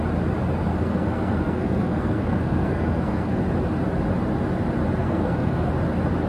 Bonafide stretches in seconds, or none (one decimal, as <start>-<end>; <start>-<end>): 0.0-0.7; 3.4-5.0; 5.7-6.3